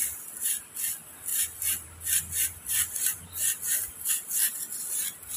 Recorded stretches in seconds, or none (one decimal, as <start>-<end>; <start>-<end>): 0.0-5.4